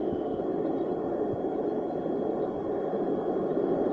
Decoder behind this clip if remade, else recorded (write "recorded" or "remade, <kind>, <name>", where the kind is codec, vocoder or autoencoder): recorded